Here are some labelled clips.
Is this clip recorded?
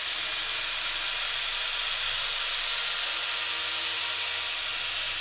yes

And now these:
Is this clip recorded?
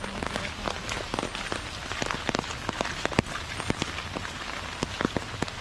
yes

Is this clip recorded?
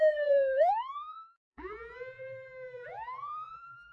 no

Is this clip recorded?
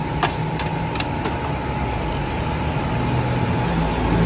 yes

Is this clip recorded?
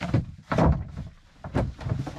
no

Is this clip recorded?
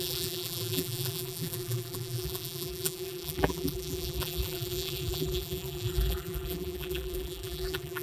no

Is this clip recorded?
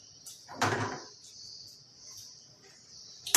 yes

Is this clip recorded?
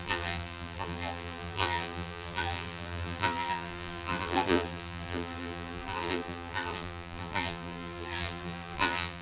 no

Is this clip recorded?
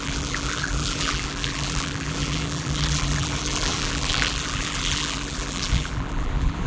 no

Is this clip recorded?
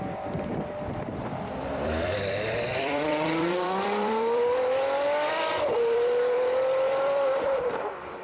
no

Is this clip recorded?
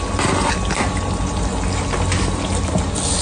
yes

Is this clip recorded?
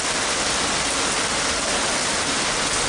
yes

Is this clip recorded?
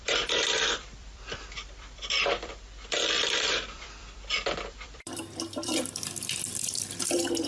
no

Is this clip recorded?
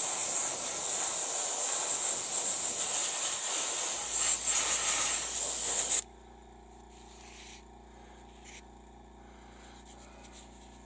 yes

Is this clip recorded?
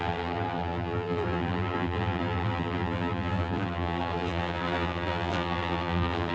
no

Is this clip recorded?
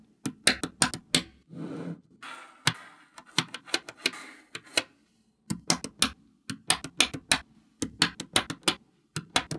yes